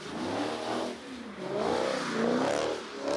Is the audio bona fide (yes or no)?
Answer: yes